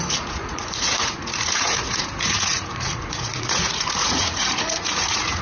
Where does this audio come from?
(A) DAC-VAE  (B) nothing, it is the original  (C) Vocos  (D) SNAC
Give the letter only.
C